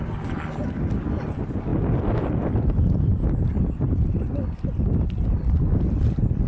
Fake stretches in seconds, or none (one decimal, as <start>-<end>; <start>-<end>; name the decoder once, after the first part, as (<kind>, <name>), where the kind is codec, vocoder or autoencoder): none